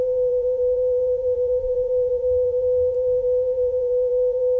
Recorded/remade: remade